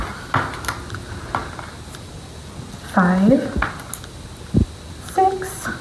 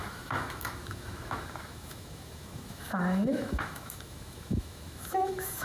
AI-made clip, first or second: second